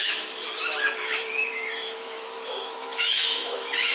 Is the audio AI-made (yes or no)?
yes